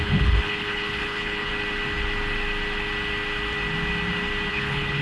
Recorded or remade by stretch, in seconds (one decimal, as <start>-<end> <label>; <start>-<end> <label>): 0.0-1.5 remade; 1.5-4.5 recorded; 4.5-5.0 remade